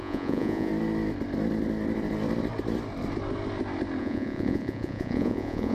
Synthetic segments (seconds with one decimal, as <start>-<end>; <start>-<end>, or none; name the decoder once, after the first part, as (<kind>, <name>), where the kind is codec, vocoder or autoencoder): 0.0-0.7 (vocoder, Vocos); 4.0-5.7